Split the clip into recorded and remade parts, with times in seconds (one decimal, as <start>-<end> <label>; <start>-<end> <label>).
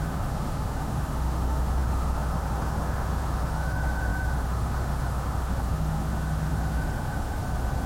0.0-7.4 remade; 7.4-7.9 recorded